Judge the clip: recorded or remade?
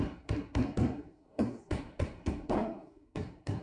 remade